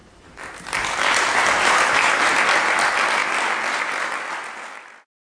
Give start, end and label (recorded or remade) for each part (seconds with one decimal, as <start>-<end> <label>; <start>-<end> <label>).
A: 0.0-2.1 remade; 2.1-5.3 recorded